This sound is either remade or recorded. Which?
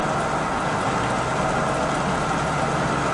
recorded